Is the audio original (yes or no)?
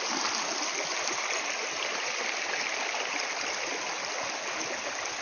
yes